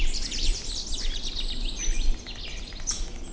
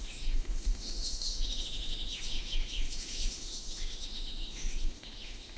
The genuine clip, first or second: first